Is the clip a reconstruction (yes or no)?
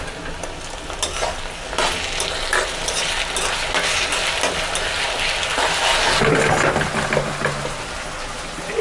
no